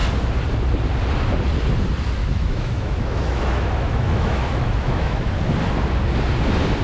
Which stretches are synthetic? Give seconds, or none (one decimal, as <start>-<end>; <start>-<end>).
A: 2.2-5.2